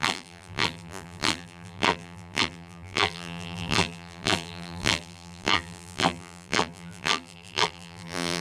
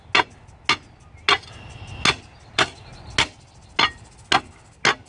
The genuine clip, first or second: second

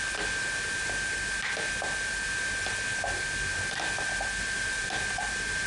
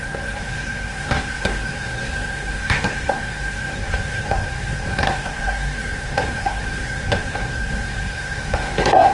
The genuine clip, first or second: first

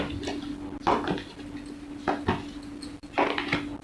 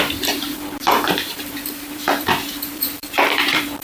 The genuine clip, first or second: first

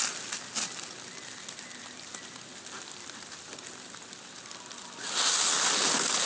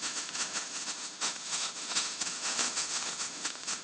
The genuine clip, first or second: first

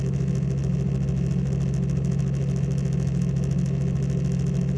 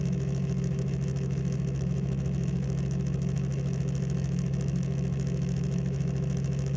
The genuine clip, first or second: first